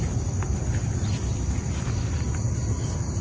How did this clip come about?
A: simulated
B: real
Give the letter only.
B